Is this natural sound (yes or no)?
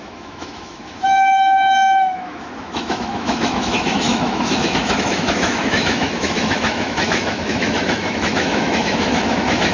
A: no